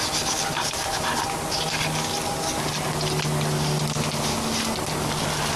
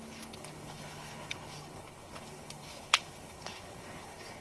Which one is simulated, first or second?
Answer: second